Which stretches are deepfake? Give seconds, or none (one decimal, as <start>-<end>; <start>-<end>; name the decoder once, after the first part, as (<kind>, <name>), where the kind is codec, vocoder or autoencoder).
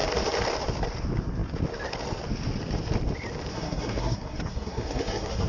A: 3.5-5.5 (codec, SNAC)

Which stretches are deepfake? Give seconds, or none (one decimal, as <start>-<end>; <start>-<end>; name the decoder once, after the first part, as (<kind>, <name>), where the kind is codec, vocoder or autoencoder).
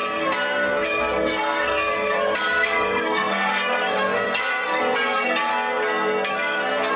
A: 0.0-5.5 (codec, SNAC); 6.3-7.0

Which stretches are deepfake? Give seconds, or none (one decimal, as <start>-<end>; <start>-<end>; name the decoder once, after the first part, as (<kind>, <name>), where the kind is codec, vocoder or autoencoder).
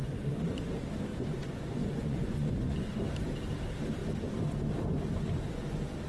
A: 0.0-0.7 (vocoder, Vocos); 1.1-3.0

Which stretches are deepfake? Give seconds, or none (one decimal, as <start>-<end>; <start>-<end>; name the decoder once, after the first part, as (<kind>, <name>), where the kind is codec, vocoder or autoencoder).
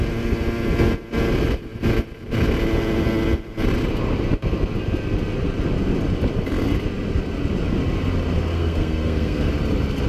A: 8.5-9.5 (codec, SNAC)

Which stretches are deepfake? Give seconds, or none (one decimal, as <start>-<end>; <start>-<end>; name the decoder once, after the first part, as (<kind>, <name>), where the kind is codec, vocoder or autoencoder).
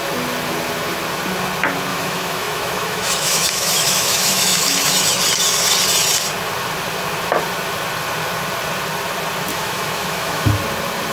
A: 1.9-4.9 (autoencoder, DAC-VAE); 9.5-10.5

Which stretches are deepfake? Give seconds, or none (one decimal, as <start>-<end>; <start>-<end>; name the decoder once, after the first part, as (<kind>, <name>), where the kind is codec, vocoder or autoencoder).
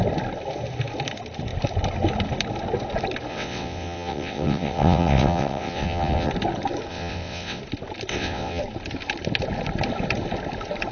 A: 3.3-6.3 (vocoder, WaveNeXt); 6.9-7.6; 8.1-8.6